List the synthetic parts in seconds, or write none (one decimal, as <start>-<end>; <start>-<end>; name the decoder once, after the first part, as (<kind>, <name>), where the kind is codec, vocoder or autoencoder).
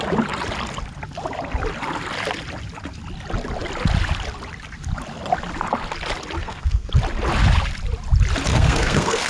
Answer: 6.4-6.9 (codec, SNAC); 8.5-9.3